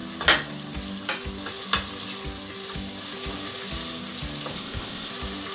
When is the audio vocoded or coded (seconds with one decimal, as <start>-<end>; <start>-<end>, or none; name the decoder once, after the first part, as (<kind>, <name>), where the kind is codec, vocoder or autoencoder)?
4.5-5.1 (codec, ZipCodec)